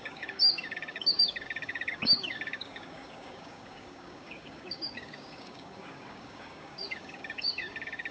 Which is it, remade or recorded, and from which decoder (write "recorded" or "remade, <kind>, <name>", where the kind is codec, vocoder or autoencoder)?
remade, codec, DAC